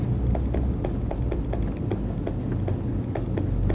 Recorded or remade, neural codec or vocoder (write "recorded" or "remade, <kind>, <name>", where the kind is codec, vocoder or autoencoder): recorded